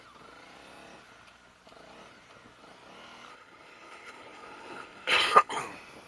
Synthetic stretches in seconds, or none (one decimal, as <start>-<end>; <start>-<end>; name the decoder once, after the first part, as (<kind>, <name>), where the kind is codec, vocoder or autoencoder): 3.3-5.6 (codec, HILCodec)